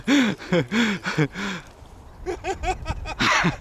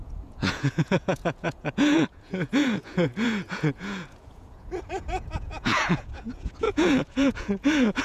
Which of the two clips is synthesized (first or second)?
second